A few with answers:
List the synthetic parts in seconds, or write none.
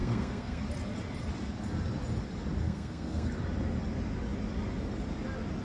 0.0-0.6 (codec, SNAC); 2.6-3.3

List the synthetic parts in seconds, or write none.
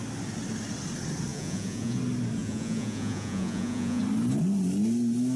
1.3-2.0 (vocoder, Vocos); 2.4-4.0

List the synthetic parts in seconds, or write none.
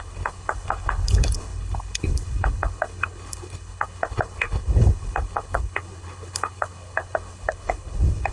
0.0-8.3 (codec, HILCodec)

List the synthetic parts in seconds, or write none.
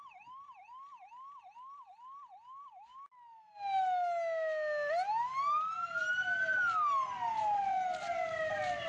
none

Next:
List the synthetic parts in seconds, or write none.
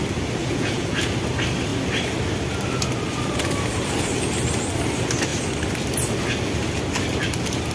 0.4-1.1 (vocoder, Vocos)